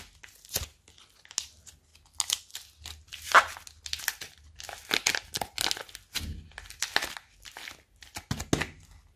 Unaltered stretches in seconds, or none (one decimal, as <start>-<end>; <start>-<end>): 0.0-9.2